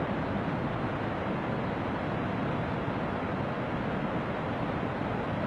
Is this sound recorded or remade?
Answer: recorded